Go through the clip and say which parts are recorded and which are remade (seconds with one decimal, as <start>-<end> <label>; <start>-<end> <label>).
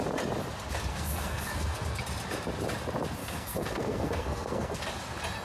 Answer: 0.0-0.9 recorded; 0.9-2.0 remade; 2.0-3.2 recorded; 3.2-4.8 remade; 4.8-5.4 recorded